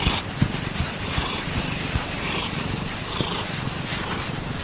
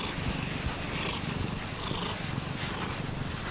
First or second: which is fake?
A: first